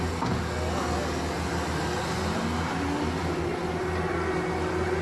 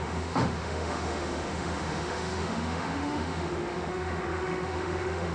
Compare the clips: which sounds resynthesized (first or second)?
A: second